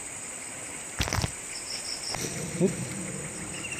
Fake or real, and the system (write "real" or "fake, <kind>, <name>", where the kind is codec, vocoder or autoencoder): real